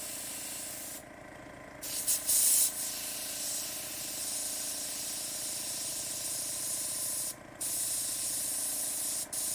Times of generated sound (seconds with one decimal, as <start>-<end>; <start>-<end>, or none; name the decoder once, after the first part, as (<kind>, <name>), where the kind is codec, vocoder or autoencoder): none